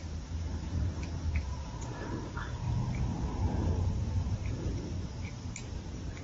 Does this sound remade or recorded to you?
remade